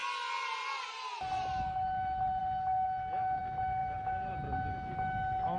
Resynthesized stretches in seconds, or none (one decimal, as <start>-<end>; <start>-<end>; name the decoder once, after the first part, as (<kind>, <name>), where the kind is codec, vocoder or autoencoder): none

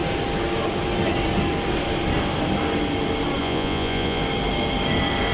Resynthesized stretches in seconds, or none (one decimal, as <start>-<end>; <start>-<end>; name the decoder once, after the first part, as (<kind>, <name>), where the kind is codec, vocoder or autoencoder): 3.4-4.2 (vocoder, Vocos)

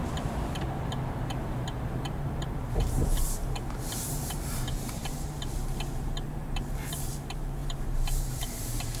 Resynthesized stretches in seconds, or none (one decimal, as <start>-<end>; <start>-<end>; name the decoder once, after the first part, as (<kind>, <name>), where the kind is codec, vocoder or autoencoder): 0.0-9.0 (vocoder, BigVGAN v2)

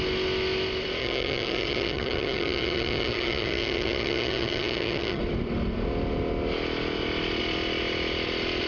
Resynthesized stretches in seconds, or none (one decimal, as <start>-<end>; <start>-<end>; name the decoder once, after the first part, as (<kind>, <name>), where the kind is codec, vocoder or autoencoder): 1.0-5.2 (vocoder, HiFi-GAN)

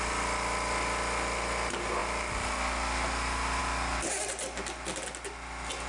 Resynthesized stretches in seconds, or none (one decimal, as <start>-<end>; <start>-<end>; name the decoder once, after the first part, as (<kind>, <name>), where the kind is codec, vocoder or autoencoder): none